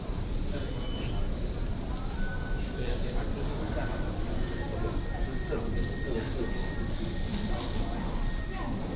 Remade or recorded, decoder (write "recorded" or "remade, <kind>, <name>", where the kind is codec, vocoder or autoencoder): recorded